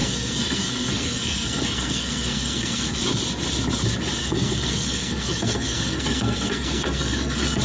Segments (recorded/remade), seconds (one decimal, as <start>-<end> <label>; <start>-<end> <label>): 0.0-3.0 remade; 3.0-4.2 recorded; 4.2-7.6 remade